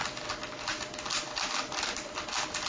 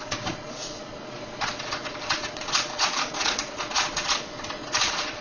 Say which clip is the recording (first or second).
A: first